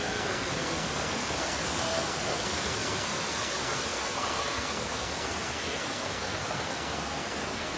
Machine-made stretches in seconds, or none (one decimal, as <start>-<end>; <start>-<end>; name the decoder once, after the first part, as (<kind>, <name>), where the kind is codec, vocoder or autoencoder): 0.0-7.8 (codec, SNAC)

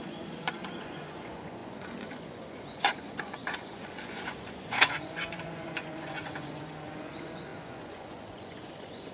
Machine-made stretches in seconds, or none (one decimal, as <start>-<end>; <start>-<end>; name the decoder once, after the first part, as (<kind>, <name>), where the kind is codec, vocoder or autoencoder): 0.0-9.1 (vocoder, Vocos)

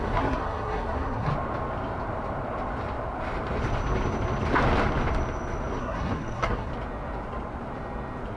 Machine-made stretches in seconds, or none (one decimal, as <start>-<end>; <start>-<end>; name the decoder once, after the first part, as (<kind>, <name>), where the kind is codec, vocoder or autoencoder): 0.0-1.3 (codec, SNAC); 5.8-6.7

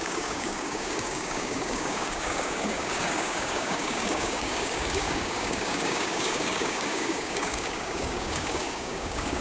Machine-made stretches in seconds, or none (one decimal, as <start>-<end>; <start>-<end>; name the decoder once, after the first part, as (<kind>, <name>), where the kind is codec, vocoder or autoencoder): 0.0-9.4 (codec, DAC)